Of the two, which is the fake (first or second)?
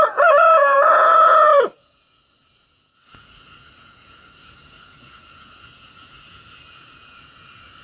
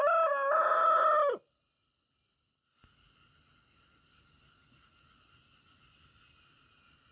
first